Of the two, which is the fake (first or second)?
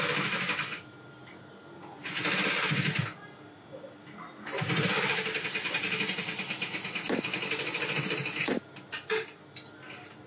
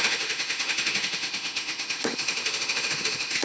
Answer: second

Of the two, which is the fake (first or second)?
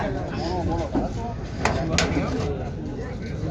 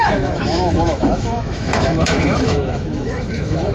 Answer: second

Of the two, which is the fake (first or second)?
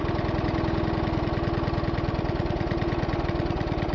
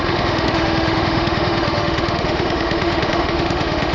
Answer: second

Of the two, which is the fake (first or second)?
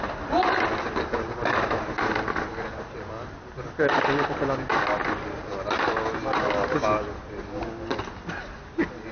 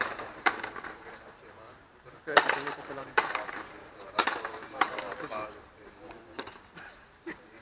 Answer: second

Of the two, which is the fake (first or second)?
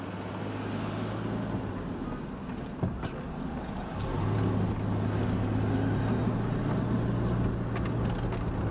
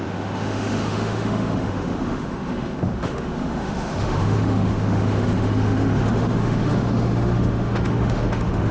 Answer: second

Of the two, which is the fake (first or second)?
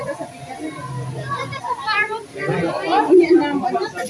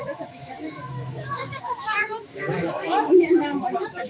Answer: second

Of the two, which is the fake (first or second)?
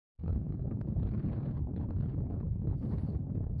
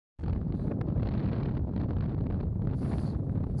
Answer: first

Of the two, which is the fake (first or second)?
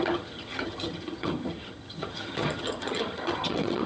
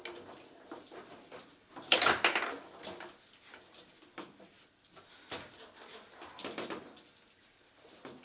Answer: first